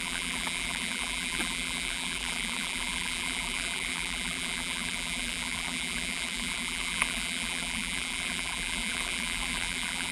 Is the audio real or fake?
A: fake